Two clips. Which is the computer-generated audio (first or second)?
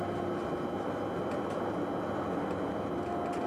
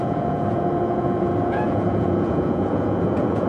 second